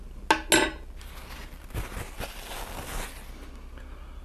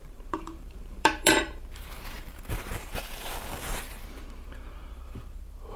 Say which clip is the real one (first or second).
first